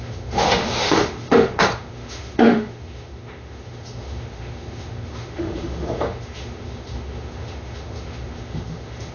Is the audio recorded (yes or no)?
no